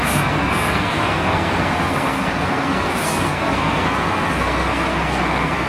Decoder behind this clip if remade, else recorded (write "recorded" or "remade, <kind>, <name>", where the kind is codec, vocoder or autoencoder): remade, codec, SNAC